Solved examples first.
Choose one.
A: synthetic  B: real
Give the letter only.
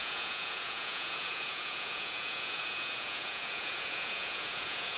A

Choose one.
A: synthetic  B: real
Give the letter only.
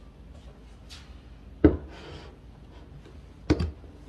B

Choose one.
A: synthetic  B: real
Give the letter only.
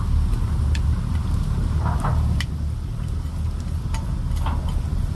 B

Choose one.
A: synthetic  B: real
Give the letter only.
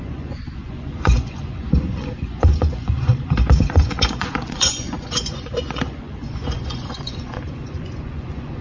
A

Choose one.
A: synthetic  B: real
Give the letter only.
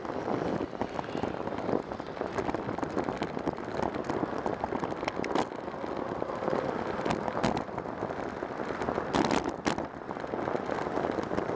B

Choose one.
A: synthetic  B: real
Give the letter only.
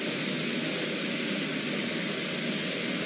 B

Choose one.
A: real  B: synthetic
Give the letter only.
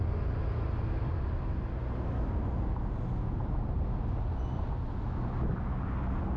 A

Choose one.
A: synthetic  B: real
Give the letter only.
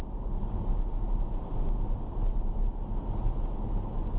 B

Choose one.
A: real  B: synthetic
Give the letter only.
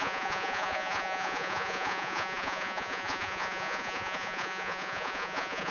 B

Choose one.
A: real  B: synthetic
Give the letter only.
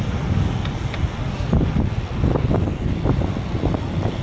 A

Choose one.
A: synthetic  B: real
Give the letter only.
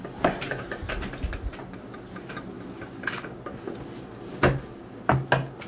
B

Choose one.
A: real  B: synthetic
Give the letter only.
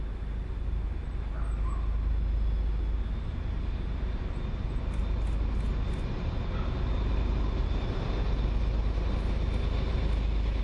A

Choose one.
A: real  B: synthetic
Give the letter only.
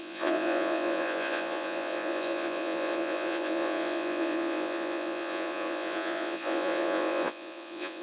B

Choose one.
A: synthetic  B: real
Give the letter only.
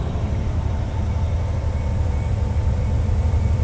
B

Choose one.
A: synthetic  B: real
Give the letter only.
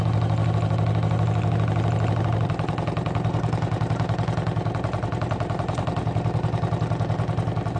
B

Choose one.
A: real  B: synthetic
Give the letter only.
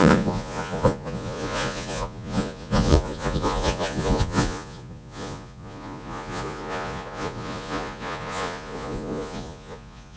B